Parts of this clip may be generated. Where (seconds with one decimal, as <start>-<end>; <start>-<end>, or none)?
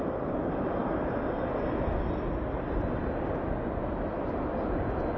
none